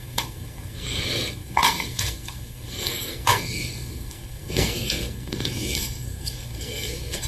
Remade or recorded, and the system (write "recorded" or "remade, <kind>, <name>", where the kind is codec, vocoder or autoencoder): remade, codec, SNAC